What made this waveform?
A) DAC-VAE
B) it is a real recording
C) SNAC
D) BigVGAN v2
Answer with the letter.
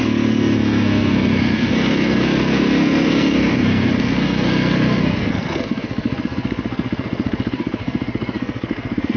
C